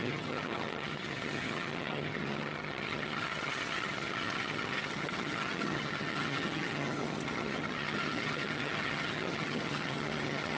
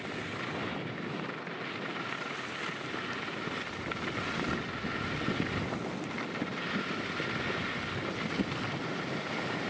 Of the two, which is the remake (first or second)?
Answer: first